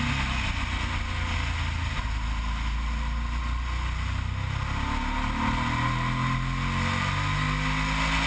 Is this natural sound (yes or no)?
yes